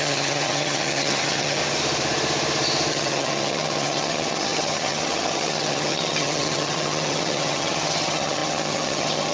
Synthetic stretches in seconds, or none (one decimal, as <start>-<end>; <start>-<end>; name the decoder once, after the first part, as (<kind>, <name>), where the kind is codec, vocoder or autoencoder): 0.0-1.6 (vocoder, HiFi-GAN); 2.9-9.3